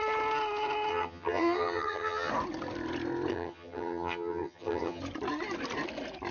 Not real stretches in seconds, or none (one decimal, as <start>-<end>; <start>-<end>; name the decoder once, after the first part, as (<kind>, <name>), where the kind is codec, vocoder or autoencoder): 0.9-2.3 (vocoder, HiFi-GAN); 3.3-5.0